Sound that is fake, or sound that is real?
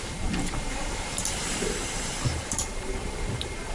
fake